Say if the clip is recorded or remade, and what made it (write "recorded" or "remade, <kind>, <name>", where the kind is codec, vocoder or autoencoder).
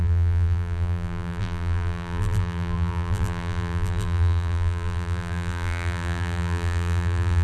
remade, vocoder, BigVGAN v2